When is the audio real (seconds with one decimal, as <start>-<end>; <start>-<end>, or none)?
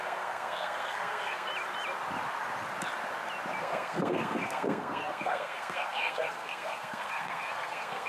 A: 1.5-3.6